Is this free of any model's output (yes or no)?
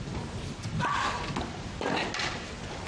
yes